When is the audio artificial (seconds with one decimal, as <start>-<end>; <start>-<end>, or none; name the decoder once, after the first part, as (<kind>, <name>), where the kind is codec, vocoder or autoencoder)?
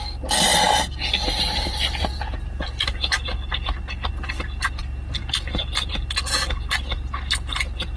none